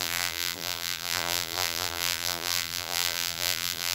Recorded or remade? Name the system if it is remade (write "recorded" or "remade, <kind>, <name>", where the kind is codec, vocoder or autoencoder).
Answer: remade, vocoder, BigVGAN v2